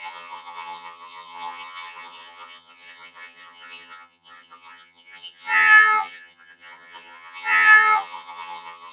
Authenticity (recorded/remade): remade